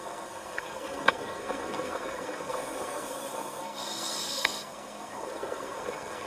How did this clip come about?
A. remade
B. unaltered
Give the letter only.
A